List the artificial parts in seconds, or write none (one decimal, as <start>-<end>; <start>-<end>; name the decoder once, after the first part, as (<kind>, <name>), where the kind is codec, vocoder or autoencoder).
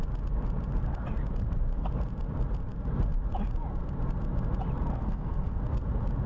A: 4.9-5.6 (codec, SNAC)